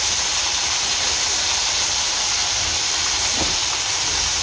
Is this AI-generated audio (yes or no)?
yes